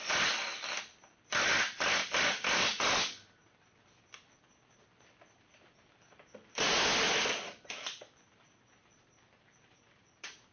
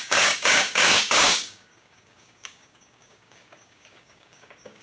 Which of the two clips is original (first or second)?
first